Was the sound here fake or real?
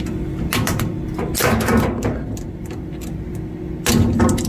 real